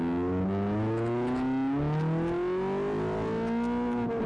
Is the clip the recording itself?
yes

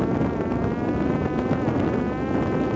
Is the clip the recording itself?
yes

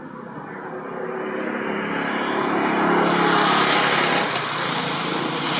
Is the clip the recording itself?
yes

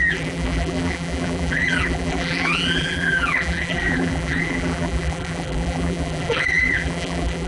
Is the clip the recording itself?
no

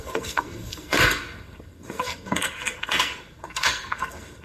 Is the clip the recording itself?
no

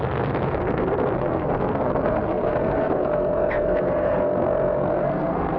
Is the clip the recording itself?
no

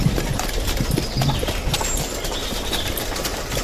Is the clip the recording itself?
yes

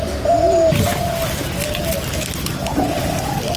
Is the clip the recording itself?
yes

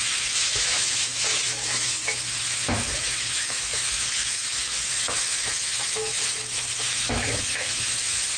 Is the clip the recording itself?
no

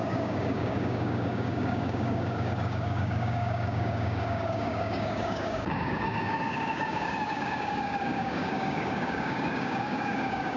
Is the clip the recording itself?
no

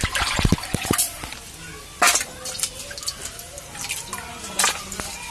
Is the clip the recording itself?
yes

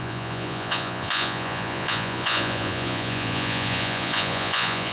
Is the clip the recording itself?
no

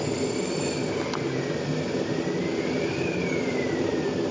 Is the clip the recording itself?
yes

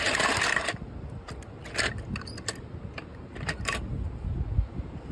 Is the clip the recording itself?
yes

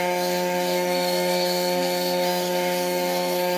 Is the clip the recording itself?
no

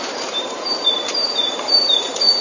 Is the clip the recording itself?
no